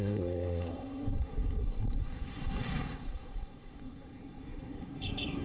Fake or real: fake